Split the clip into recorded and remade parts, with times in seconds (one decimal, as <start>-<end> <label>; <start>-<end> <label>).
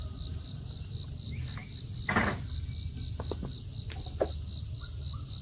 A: 0.0-5.4 recorded